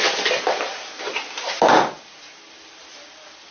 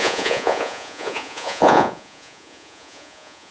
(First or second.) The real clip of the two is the first